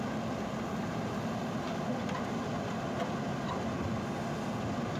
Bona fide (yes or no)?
yes